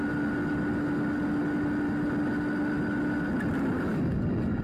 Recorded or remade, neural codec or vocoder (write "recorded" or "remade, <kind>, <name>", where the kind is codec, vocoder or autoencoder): recorded